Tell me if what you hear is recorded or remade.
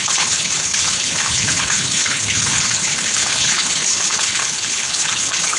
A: remade